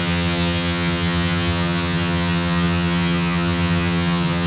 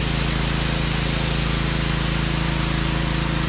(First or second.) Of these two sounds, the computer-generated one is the first